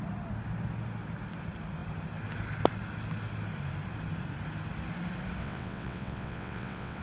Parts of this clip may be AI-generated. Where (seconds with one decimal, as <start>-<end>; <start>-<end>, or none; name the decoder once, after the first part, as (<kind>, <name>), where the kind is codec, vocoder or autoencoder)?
5.4-7.0 (vocoder, WaveNeXt)